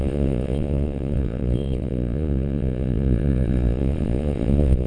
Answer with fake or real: fake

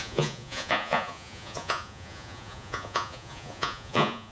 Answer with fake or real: fake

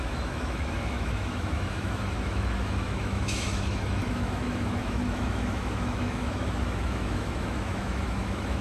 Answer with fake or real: fake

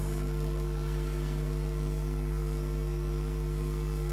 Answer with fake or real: fake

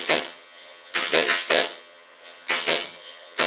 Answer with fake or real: fake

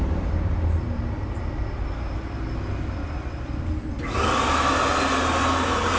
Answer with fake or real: real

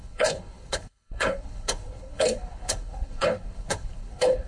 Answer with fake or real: fake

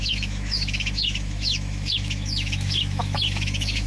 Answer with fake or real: fake